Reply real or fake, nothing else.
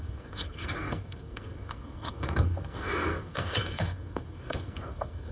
fake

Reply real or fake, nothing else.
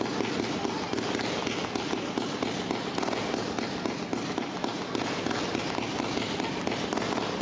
real